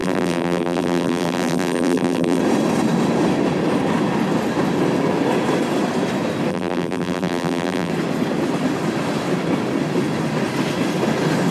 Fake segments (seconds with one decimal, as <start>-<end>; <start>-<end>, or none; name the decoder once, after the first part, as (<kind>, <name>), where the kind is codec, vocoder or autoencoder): 0.0-2.4 (vocoder, BigVGAN v2); 6.5-7.9